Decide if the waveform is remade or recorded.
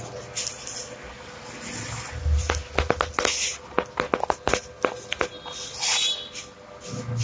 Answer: recorded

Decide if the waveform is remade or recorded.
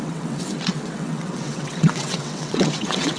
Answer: remade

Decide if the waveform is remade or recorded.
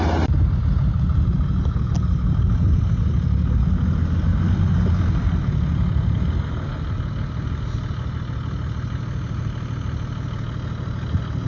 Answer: recorded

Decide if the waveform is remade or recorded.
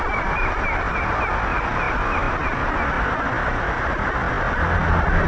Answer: recorded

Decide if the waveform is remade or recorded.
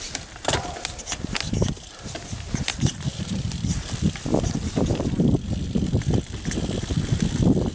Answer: recorded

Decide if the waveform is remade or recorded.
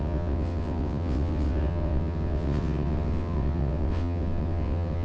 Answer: remade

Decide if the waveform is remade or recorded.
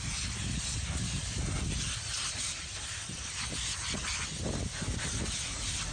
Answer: recorded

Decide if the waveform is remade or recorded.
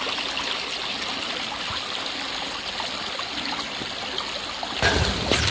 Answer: recorded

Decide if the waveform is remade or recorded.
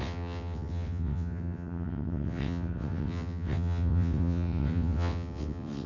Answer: remade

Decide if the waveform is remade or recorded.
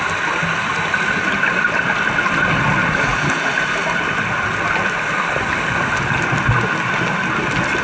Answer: recorded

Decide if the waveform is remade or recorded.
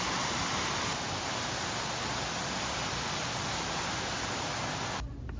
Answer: recorded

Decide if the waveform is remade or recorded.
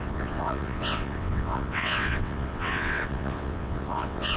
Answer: remade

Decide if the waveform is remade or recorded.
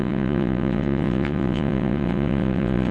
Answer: remade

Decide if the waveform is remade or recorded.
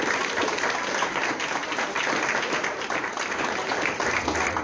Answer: recorded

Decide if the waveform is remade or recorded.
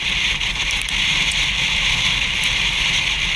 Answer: recorded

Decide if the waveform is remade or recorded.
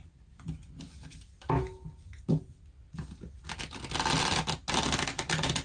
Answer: recorded